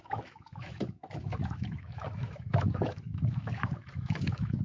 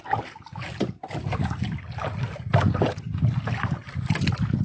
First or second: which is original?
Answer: second